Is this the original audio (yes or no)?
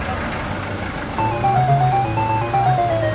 yes